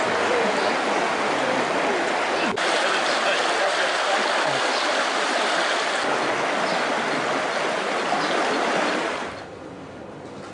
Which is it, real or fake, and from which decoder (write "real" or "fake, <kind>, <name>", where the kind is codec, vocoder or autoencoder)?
real